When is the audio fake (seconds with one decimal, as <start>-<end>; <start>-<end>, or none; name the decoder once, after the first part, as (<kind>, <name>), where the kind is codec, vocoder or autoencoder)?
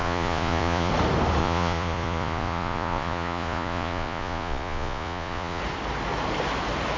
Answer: 0.0-0.9 (vocoder, Vocos); 1.4-5.6